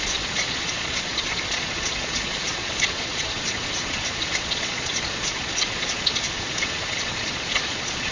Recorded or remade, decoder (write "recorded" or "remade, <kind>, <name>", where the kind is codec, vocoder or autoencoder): remade, vocoder, Vocos